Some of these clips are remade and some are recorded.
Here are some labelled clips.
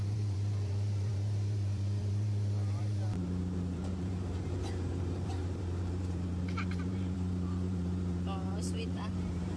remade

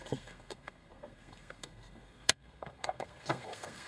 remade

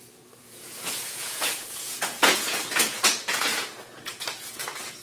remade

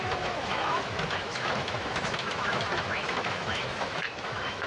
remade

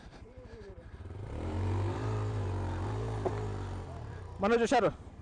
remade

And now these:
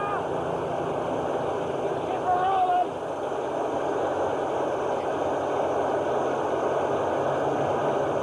recorded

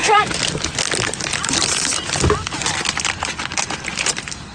recorded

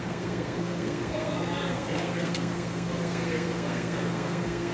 remade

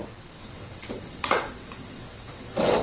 remade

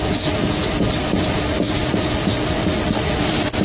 recorded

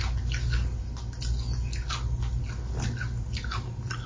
recorded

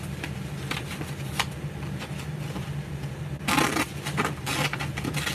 recorded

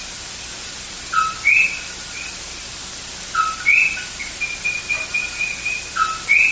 recorded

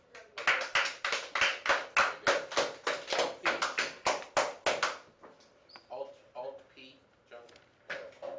recorded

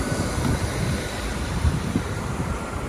remade